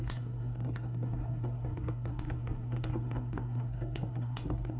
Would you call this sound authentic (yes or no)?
no